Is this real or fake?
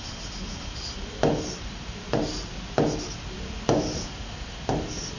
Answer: real